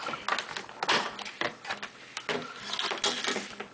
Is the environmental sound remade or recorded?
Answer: recorded